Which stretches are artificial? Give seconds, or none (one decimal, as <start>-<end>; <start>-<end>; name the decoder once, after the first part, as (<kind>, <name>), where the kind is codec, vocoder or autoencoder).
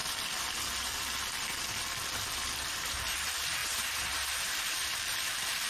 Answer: 2.7-3.6 (vocoder, BigVGAN v2); 4.5-5.7